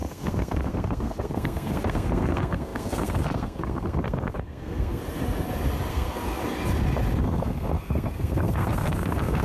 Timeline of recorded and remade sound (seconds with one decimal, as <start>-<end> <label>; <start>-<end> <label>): 0.0-5.0 remade; 5.0-5.9 recorded; 5.9-6.4 remade; 6.4-7.2 recorded; 7.2-9.4 remade